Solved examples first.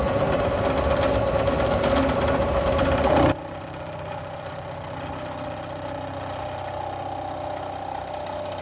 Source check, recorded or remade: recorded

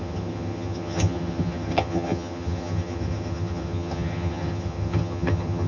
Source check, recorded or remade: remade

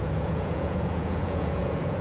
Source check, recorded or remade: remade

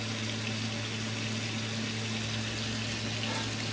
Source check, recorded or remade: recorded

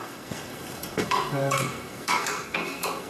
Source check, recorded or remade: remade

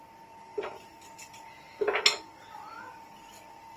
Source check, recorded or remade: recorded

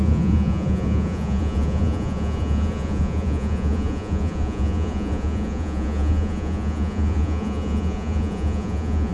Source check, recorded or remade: remade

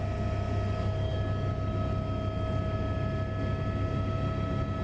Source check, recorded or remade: recorded